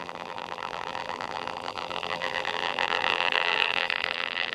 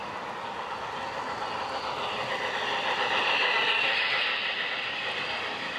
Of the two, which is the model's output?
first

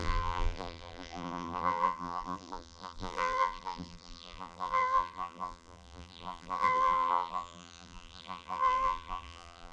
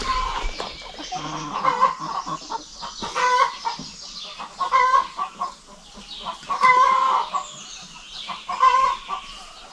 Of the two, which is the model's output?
first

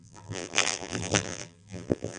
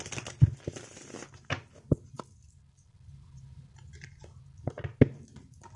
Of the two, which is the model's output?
first